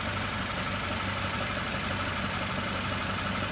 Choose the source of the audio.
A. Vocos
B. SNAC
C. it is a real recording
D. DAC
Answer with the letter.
C